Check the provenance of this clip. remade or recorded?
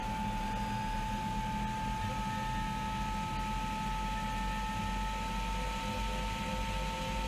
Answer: recorded